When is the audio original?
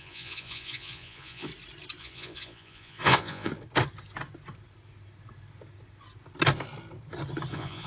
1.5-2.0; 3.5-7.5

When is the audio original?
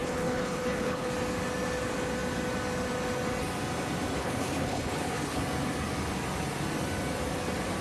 1.1-4.2; 5.4-7.8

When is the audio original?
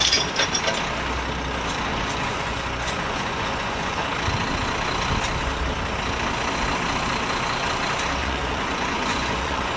0.0-1.9; 4.0-8.2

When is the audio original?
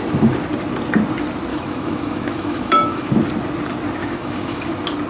0.0-1.5; 3.1-4.0; 4.6-5.1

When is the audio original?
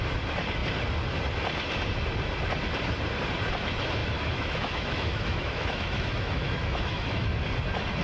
0.0-4.0; 7.4-8.0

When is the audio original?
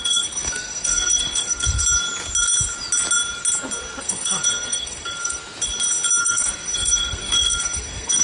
1.8-4.0; 5.4-6.2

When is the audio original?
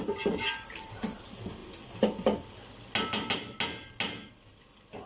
0.0-5.1